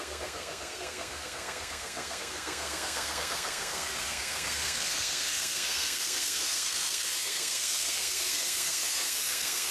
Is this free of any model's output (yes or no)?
no